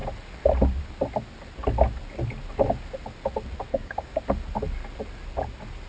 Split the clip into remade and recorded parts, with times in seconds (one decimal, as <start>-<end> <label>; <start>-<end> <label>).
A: 0.0-3.7 recorded; 3.7-4.2 remade; 4.2-5.9 recorded